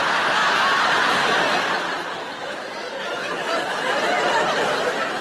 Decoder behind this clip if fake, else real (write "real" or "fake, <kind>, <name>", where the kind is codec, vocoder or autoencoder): real